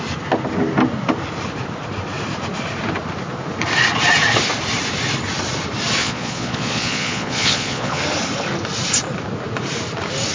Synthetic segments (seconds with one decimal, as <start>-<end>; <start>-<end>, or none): 6.0-8.0